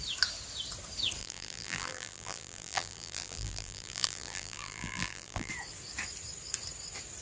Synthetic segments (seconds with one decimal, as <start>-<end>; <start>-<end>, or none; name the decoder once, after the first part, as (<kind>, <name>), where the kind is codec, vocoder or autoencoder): 1.2-5.5 (vocoder, BigVGAN v2)